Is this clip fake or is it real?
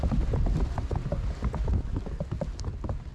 real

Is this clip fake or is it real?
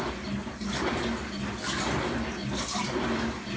real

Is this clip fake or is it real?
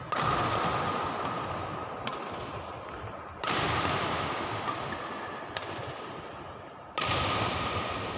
real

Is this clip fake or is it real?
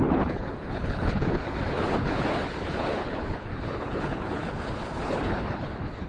fake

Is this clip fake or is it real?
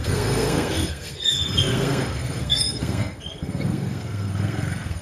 fake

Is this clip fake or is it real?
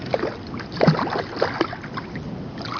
real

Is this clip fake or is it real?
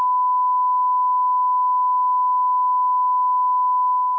real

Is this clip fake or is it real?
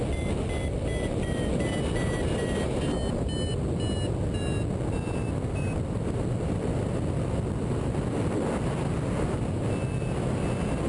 real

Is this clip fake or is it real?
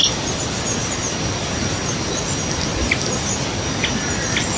real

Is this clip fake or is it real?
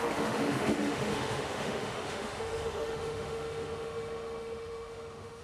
fake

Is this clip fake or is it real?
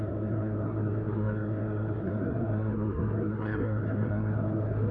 fake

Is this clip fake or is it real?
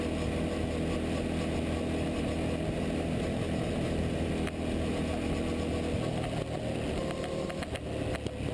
real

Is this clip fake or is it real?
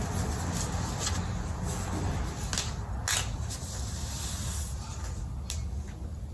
real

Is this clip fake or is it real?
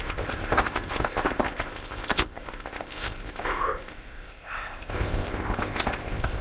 fake